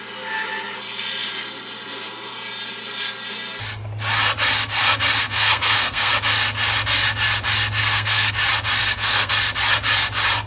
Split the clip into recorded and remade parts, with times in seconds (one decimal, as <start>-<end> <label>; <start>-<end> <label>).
0.0-5.3 recorded; 5.3-6.1 remade; 6.1-7.8 recorded; 7.8-8.3 remade; 8.3-8.8 recorded; 8.8-9.3 remade; 9.3-10.5 recorded

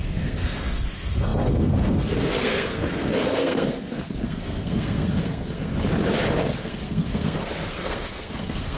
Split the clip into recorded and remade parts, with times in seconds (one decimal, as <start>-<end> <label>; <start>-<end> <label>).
0.0-5.7 remade; 5.7-6.6 recorded; 6.6-8.8 remade

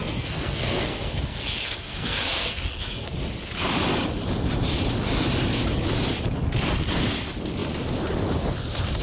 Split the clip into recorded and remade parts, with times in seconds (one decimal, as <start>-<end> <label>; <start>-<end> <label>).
0.0-3.1 remade; 3.1-9.0 recorded

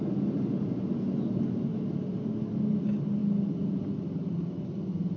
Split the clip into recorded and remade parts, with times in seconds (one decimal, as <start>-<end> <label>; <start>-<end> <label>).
0.0-5.2 recorded

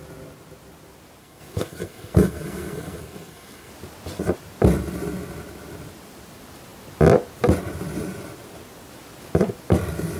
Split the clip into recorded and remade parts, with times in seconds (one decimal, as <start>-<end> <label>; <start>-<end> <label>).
0.0-1.2 recorded; 1.2-3.7 remade; 3.7-10.2 recorded

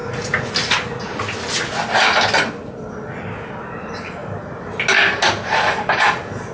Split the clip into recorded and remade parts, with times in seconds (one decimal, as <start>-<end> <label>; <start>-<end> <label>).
0.0-6.5 recorded

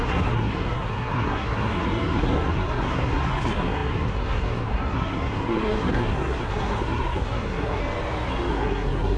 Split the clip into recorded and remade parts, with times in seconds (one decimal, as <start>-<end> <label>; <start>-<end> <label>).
0.0-7.8 remade; 7.8-8.5 recorded; 8.5-9.2 remade

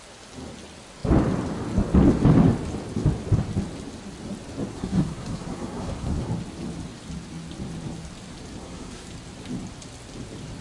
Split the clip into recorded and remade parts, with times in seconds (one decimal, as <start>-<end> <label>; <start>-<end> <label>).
0.0-4.7 recorded; 4.7-6.2 remade; 6.2-8.6 recorded; 8.6-9.1 remade; 9.1-10.6 recorded